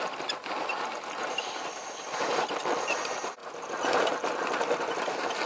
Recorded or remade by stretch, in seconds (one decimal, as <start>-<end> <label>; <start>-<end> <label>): 0.0-1.2 recorded; 1.2-2.5 remade; 2.5-5.5 recorded